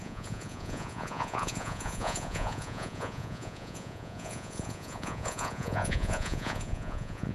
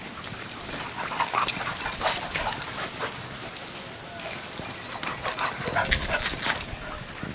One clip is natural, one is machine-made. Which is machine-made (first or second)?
first